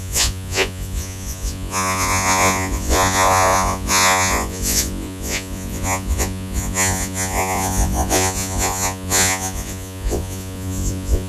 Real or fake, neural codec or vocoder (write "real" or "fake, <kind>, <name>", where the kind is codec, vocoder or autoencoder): fake, vocoder, Vocos